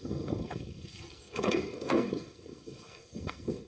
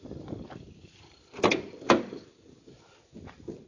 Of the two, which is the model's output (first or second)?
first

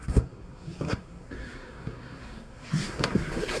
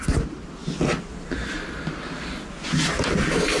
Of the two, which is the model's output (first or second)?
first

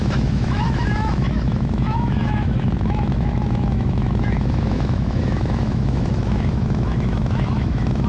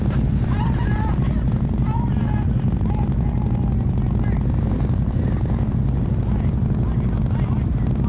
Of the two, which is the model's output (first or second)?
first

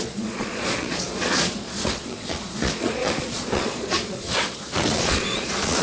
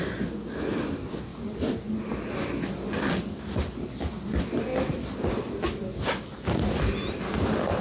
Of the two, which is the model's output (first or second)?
first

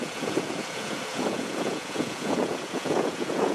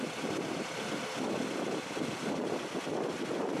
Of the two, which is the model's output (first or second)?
first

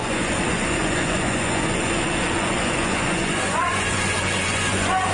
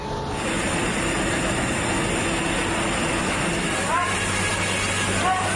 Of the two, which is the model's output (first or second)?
first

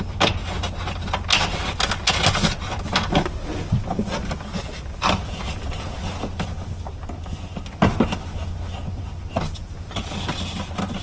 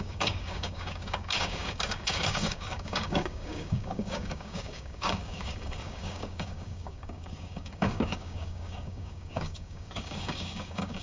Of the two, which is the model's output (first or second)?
second